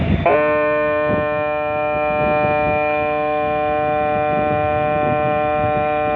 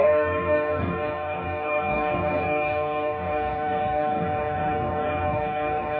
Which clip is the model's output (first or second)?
second